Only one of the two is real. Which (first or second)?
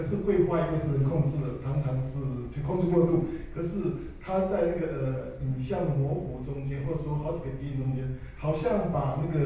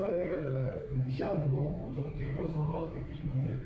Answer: first